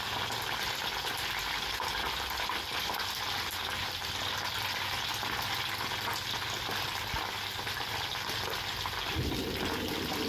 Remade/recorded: recorded